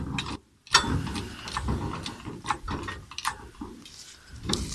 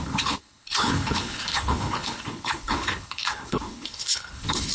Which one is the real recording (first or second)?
first